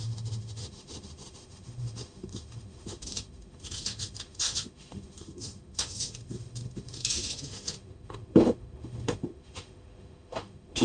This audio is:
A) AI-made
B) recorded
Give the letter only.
A